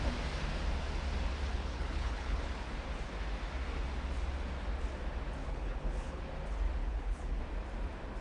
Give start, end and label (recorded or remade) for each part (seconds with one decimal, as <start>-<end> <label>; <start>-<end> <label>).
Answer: 0.0-1.5 recorded; 1.5-2.5 remade; 2.5-5.4 recorded; 5.4-6.2 remade; 6.2-6.8 recorded; 6.8-7.4 remade; 7.4-8.2 recorded